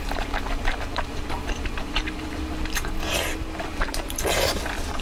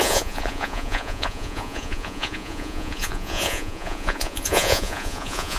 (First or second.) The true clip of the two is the first